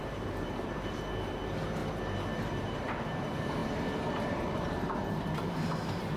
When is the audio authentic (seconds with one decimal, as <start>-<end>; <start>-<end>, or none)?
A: 1.8-2.4